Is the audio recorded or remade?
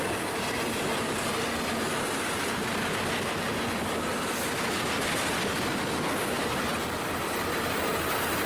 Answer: recorded